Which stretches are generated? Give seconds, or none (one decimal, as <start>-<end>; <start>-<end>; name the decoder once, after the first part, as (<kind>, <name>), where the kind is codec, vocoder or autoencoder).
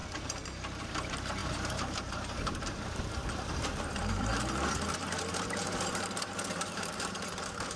0.0-7.8 (vocoder, BigVGAN v2)